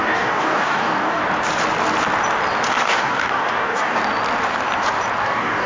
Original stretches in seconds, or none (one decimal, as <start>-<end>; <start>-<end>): 1.2-2.8; 4.0-5.2